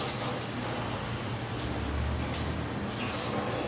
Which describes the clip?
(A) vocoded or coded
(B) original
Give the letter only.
B